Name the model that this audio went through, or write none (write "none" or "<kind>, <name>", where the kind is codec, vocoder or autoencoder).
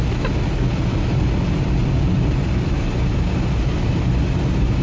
none